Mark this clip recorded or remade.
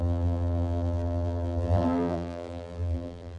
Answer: remade